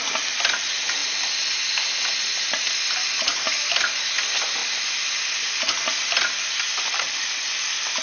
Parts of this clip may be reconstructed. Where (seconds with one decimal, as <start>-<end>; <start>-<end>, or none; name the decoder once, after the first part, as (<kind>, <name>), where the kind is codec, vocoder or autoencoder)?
none